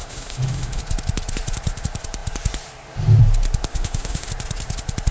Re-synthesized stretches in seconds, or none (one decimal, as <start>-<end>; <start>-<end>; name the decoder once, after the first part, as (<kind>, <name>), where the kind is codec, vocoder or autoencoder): 0.0-0.8 (autoencoder, DAC-VAE); 3.7-4.3